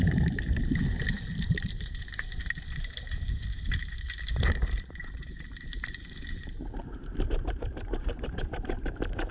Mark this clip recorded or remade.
remade